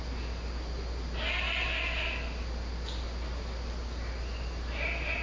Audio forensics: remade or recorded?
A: recorded